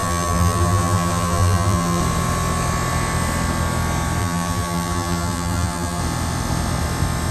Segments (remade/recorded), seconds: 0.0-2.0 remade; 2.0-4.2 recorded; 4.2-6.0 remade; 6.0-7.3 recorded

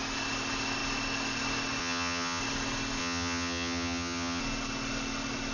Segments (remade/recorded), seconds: 0.0-1.8 recorded; 1.8-2.4 remade; 2.4-3.0 recorded; 3.0-4.4 remade; 4.4-5.5 recorded

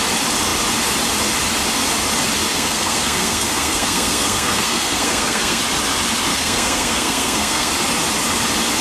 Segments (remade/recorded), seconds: 0.0-2.5 recorded; 2.5-5.6 remade; 5.6-6.3 recorded; 6.3-7.7 remade; 7.7-8.8 recorded

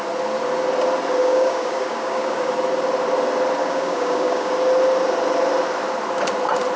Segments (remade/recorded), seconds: 0.0-1.2 recorded; 1.2-2.5 remade; 2.5-3.6 recorded; 3.6-4.5 remade; 4.5-6.8 recorded

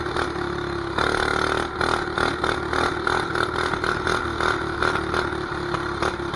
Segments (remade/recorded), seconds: 0.0-6.4 recorded

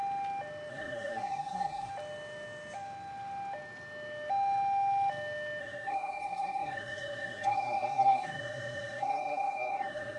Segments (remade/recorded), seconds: 0.0-0.7 recorded; 0.7-1.9 remade; 1.9-5.6 recorded; 5.6-10.2 remade